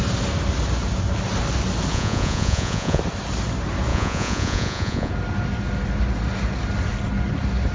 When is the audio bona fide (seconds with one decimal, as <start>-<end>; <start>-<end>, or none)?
0.0-1.9; 3.0-3.9; 5.1-7.7